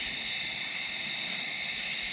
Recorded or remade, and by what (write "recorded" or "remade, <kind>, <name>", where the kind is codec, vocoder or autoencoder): recorded